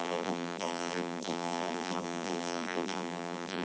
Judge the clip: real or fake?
fake